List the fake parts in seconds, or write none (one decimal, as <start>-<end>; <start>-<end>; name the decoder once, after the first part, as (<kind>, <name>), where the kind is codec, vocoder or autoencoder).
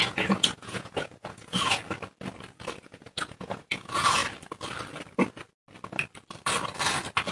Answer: 0.0-1.8 (vocoder, Vocos); 2.8-4.2